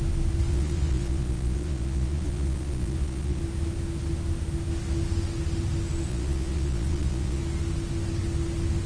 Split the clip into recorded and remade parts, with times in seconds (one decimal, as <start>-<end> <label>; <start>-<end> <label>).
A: 0.0-0.5 recorded; 0.5-3.4 remade; 3.4-6.1 recorded; 6.1-7.4 remade; 7.4-8.9 recorded